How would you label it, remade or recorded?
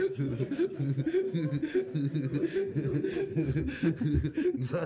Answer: recorded